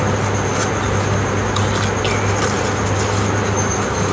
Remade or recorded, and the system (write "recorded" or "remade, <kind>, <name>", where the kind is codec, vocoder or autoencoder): recorded